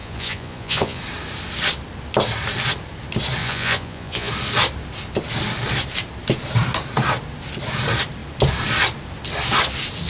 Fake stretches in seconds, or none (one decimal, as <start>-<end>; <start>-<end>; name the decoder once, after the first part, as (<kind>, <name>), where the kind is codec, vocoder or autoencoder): 0.0-1.0 (vocoder, Vocos); 3.4-4.3